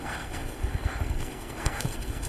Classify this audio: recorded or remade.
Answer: remade